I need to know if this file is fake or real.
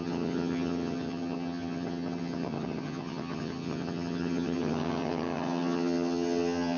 fake